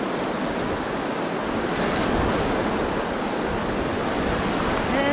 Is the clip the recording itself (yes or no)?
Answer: yes